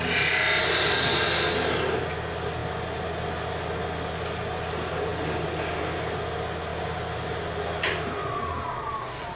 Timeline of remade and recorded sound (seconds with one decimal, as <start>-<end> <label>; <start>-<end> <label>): 0.0-9.3 recorded

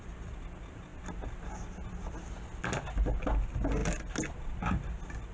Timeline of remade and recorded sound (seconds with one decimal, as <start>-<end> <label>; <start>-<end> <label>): 0.0-5.3 recorded

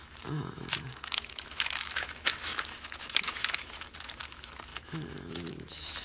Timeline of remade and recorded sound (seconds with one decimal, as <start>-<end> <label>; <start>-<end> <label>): 0.0-6.0 remade

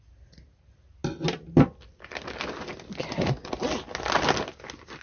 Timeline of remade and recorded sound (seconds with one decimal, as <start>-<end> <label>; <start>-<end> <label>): 0.0-5.0 recorded

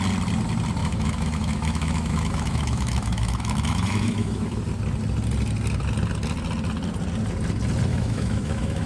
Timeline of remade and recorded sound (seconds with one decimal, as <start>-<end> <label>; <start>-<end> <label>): 0.0-0.8 recorded; 0.8-4.6 remade; 4.6-7.9 recorded; 7.9-8.9 remade

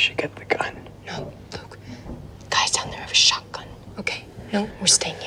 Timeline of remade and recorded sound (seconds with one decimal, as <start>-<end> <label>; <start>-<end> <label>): 0.0-4.1 recorded; 4.1-4.7 remade; 4.7-5.3 recorded

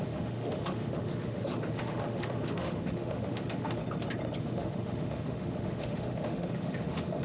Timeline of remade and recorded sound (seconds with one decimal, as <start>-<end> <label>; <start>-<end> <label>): 0.0-3.8 remade; 3.8-4.4 recorded; 4.4-7.2 remade